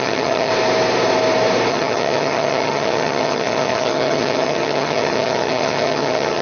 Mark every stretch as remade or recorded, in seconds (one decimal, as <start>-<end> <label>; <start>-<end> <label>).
0.0-0.5 remade; 0.5-1.7 recorded; 1.7-6.4 remade